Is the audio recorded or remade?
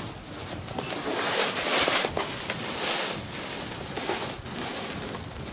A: recorded